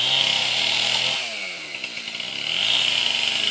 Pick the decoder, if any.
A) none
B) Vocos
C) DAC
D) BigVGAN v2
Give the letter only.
A